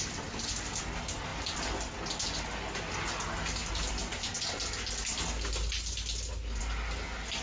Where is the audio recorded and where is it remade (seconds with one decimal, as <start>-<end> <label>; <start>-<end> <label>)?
0.0-7.4 recorded